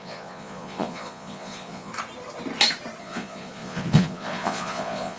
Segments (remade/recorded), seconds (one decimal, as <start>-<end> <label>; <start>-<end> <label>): 0.0-1.9 remade; 1.9-3.0 recorded; 3.0-5.2 remade

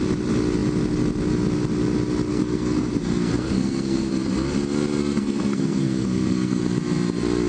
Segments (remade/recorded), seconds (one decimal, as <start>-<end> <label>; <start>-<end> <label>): 0.0-2.3 recorded; 2.3-4.1 remade; 4.1-5.0 recorded; 5.0-6.6 remade; 6.6-7.5 recorded

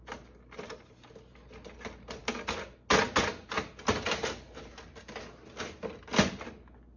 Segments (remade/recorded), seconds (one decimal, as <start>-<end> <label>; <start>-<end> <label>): 0.0-7.0 recorded

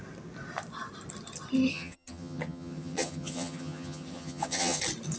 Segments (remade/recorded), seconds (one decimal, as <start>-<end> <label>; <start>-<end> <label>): 0.0-1.7 recorded; 1.7-4.8 remade; 4.8-5.2 recorded

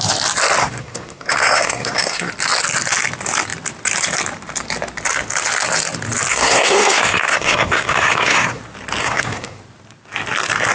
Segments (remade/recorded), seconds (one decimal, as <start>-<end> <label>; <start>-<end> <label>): 0.0-0.6 recorded; 0.6-2.3 remade; 2.3-6.3 recorded; 6.3-8.6 remade; 8.6-9.0 recorded; 9.0-9.6 remade; 9.6-10.7 recorded

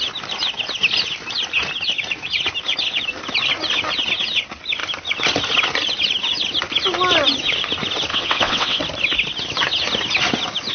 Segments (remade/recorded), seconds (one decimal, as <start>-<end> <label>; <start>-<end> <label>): 0.0-8.1 recorded; 8.1-8.8 remade; 8.8-10.7 recorded

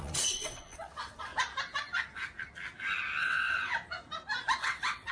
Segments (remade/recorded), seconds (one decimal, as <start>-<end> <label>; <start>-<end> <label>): 0.0-1.3 remade; 1.3-3.2 recorded; 3.2-3.7 remade; 3.7-4.6 recorded; 4.6-5.1 remade

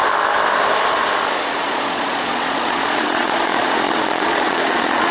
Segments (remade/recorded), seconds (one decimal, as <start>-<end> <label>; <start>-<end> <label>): 0.0-1.6 recorded; 1.6-5.1 remade